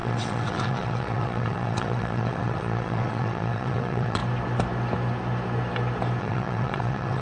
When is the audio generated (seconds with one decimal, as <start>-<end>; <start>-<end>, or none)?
0.0-4.2; 6.2-7.2